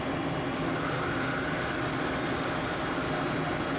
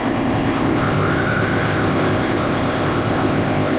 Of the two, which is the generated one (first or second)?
second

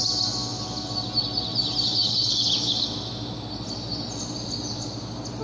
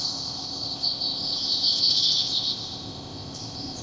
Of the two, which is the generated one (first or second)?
second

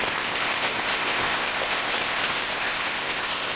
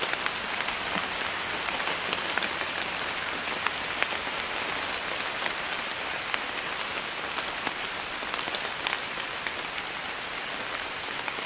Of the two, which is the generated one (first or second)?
first